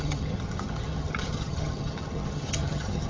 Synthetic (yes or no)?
yes